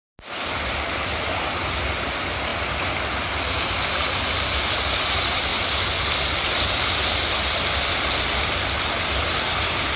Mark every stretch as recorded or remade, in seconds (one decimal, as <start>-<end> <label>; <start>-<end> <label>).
0.0-10.0 recorded